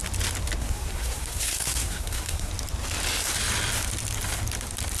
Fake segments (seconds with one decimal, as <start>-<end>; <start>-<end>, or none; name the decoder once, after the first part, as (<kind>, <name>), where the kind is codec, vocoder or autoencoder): 0.6-2.5 (codec, SNAC)